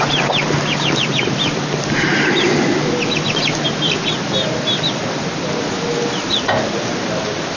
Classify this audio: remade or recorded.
recorded